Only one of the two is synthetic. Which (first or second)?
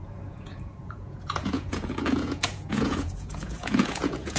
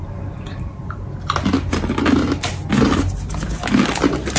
first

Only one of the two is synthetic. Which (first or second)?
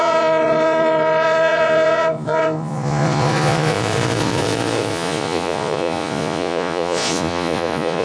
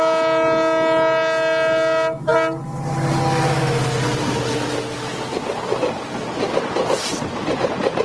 first